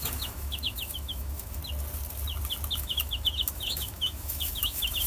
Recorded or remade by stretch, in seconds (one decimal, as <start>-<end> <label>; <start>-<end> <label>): 0.0-1.6 remade; 1.6-2.8 recorded; 2.8-5.1 remade